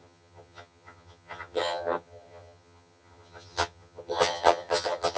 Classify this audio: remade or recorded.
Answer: remade